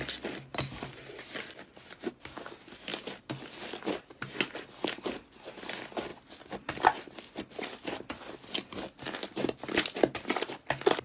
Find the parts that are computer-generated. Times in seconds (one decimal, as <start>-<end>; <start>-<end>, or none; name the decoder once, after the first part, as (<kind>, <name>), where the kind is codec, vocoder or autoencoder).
none